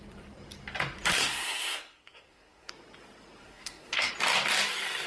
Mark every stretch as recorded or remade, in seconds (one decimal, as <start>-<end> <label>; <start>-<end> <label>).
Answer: 0.0-1.2 recorded; 1.2-2.7 remade; 2.7-3.4 recorded; 3.4-4.1 remade; 4.1-5.1 recorded